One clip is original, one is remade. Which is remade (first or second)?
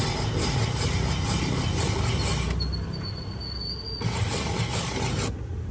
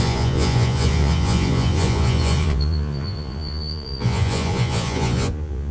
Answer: second